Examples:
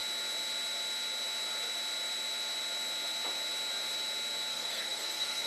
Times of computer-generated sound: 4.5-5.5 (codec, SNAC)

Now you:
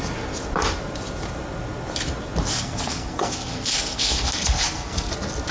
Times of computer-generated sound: 2.5-5.1 (codec, SNAC)

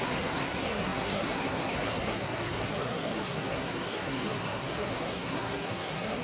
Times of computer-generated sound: 0.0-6.2 (codec, SNAC)

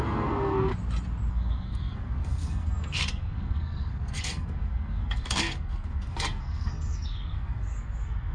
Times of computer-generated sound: 0.0-0.7 (codec, SNAC); 1.3-8.3

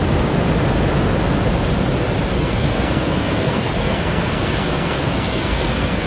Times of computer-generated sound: 2.3-6.1 (codec, SNAC)

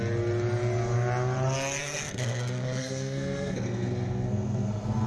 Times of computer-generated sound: 1.8-5.1 (codec, SNAC)

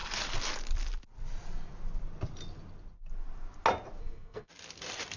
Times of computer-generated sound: 4.0-4.5 (codec, SNAC)

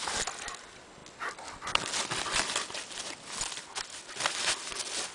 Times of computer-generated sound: none